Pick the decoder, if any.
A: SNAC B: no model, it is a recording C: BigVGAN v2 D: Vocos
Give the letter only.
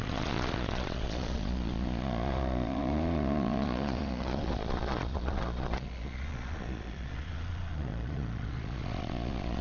D